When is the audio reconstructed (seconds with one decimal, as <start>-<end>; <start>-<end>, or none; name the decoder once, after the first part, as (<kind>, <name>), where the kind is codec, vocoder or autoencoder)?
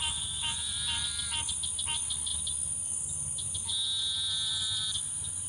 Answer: none